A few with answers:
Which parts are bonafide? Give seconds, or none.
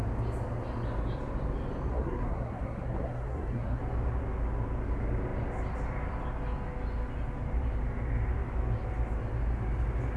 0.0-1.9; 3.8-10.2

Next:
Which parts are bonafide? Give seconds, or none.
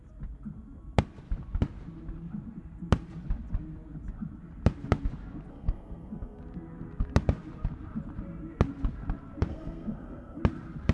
0.0-5.5; 6.4-9.5; 10.4-10.9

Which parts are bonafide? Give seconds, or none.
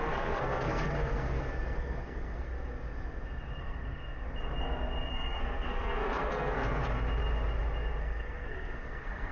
2.5-3.6; 4.0-5.1; 6.8-8.0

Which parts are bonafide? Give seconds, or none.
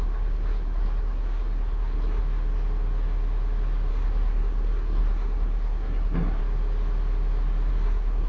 2.2-3.9; 6.4-7.7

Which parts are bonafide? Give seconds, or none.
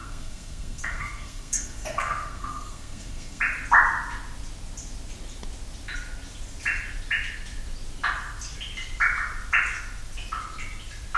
3.4-11.2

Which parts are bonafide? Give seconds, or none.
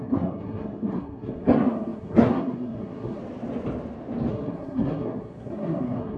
3.2-4.3